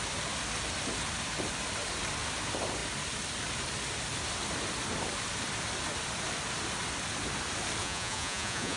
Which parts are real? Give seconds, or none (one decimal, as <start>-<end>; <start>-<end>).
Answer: 0.0-7.8